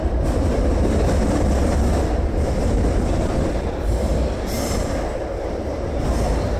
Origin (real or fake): real